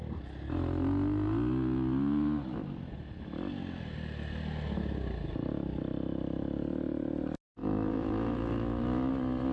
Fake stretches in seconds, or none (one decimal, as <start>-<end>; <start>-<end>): 7.6-9.1